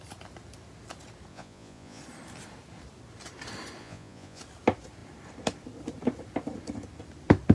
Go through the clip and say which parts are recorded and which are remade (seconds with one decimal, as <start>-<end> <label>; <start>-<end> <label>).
0.0-1.3 recorded; 1.3-2.0 remade; 2.0-3.8 recorded; 3.8-4.4 remade; 4.4-7.5 recorded